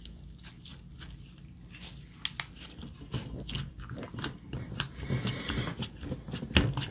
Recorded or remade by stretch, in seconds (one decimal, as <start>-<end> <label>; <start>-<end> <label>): 0.0-6.9 recorded